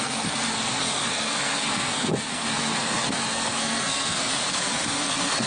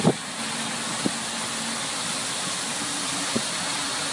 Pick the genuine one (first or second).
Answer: second